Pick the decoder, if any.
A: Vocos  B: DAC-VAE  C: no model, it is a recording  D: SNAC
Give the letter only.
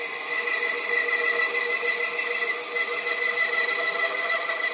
C